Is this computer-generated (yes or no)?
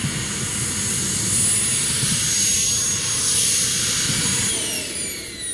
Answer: no